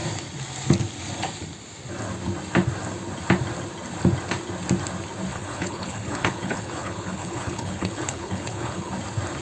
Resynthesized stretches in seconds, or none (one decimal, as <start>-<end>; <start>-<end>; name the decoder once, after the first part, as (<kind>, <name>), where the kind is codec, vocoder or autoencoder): 5.3-8.9 (codec, HILCodec)